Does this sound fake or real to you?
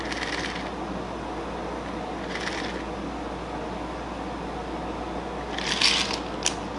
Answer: real